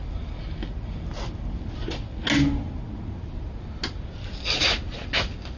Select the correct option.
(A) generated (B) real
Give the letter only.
B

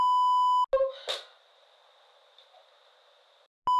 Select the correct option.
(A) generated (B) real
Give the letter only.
B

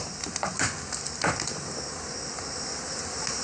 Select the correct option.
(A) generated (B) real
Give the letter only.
B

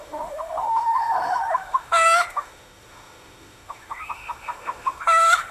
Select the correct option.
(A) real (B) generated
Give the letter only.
B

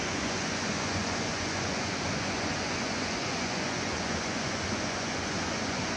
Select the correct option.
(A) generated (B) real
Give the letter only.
A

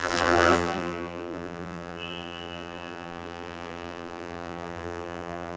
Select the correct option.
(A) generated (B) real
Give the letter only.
A